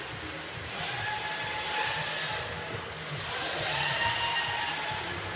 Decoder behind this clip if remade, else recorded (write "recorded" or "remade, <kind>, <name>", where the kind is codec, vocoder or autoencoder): recorded